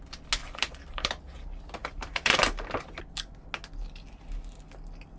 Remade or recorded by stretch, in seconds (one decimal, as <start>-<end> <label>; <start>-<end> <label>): 0.0-0.4 recorded; 0.4-1.2 remade; 1.2-1.8 recorded; 1.8-3.2 remade; 3.2-5.2 recorded